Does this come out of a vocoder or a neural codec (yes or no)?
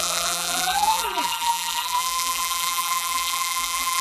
yes